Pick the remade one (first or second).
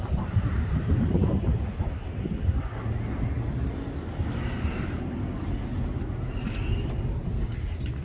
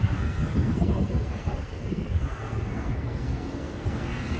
second